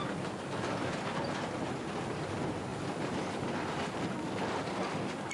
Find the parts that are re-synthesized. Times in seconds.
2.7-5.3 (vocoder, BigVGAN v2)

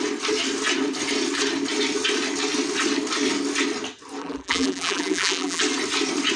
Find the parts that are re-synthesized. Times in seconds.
4.2-5.6 (vocoder, BigVGAN v2)